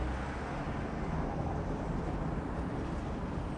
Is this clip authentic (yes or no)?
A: yes